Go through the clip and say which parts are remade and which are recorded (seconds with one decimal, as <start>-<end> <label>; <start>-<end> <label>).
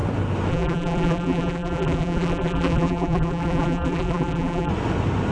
0.0-0.5 recorded; 0.5-4.7 remade; 4.7-5.3 recorded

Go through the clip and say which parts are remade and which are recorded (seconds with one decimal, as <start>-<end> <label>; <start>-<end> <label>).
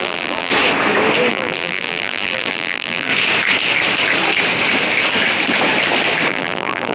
0.0-0.5 remade; 0.5-1.3 recorded; 1.3-3.1 remade; 3.1-6.3 recorded; 6.3-6.9 remade